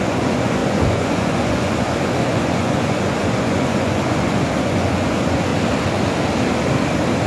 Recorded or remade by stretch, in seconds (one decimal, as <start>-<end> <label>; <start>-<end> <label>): 0.0-5.5 remade; 5.5-7.3 recorded